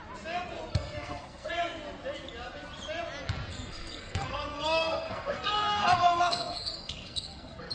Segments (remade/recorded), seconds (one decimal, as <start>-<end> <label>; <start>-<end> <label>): 0.0-0.7 recorded; 0.7-1.5 remade; 1.5-3.5 recorded; 3.5-7.7 remade